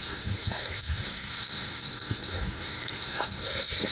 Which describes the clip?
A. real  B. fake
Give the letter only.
B